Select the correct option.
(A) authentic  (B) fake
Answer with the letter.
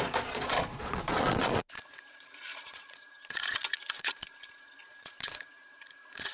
B